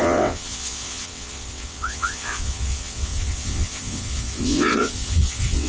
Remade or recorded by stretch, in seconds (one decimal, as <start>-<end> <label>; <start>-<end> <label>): 0.0-5.7 remade